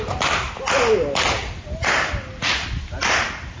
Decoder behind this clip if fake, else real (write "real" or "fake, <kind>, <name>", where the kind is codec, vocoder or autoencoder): real